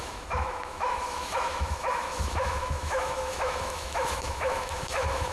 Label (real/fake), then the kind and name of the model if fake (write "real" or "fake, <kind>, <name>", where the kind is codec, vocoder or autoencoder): fake, autoencoder, DAC-VAE